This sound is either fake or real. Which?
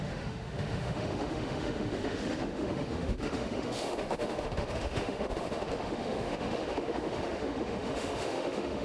fake